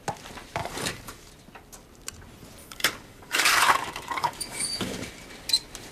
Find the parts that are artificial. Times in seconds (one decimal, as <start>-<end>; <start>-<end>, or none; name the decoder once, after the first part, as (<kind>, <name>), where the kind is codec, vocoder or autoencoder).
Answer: 0.6-1.3 (codec, DAC); 2.6-5.1